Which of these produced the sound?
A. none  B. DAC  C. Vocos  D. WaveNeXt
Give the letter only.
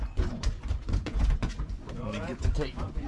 C